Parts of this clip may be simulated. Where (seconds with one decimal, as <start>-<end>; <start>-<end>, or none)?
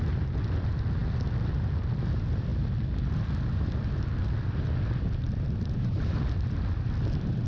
none